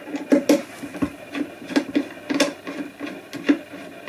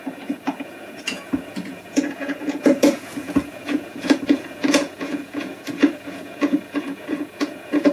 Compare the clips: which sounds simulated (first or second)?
second